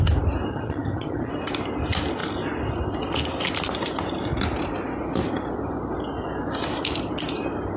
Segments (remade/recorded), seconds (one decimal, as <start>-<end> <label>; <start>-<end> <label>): 0.0-0.5 recorded; 0.5-1.3 remade; 1.3-7.8 recorded